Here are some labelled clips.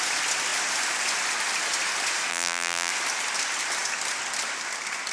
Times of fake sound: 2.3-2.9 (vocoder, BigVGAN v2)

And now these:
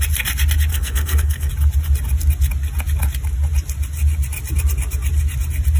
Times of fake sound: 0.7-1.5 (codec, SNAC)

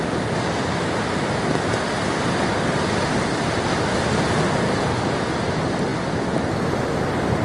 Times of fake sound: 2.5-3.4 (vocoder, BigVGAN v2)

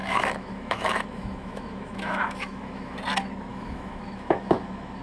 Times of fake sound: 0.0-3.0 (autoencoder, DAC-VAE); 3.5-5.0

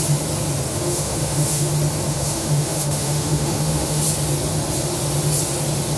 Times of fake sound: 0.7-1.7 (autoencoder, DAC-VAE); 2.1-4.0

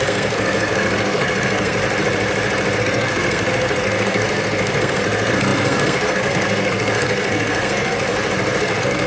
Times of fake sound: 0.0-1.8 (codec, SNAC); 2.8-8.1; 8.6-9.1

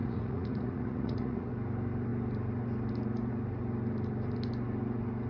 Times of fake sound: 0.0-1.5 (vocoder, Vocos)

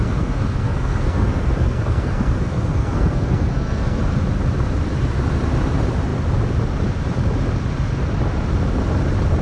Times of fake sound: 0.0-4.0 (codec, SNAC)